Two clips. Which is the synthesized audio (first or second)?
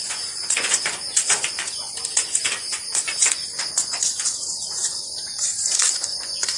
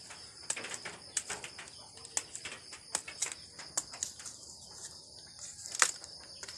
first